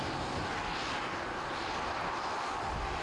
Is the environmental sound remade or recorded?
recorded